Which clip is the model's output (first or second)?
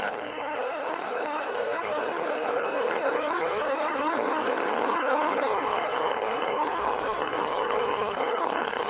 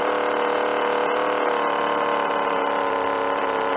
first